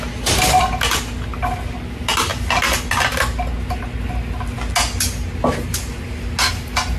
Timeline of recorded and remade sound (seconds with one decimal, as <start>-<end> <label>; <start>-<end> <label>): 0.0-7.0 recorded